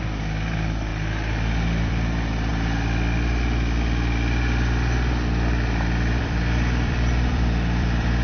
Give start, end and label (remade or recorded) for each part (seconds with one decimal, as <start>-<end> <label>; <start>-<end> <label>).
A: 0.0-0.9 remade; 0.9-1.8 recorded; 1.8-2.5 remade; 2.5-6.2 recorded; 6.2-8.2 remade